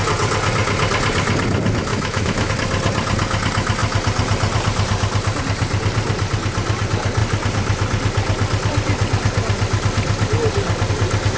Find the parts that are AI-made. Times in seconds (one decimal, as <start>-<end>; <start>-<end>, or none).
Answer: 1.9-2.5